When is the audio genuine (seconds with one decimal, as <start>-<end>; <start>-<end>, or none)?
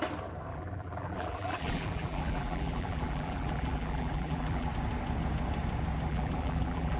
0.0-0.5; 4.7-6.1